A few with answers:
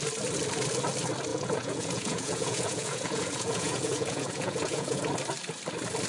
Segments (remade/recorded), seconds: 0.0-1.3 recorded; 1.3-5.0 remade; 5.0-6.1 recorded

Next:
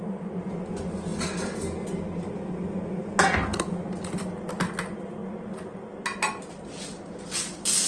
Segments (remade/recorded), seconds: 0.0-7.9 recorded

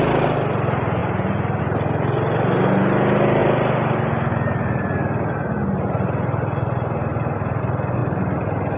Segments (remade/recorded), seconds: 0.0-8.8 recorded